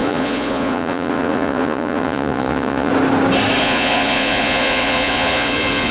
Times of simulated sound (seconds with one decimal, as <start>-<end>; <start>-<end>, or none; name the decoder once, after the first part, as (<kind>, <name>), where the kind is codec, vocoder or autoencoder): 0.0-2.9 (vocoder, Vocos); 3.6-5.9